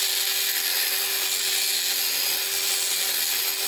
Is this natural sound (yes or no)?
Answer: yes